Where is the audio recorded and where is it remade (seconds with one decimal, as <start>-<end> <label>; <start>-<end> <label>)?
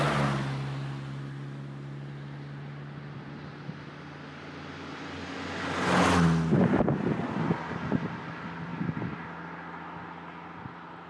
0.0-11.1 recorded